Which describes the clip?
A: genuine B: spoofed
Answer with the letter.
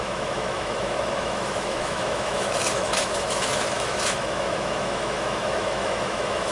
B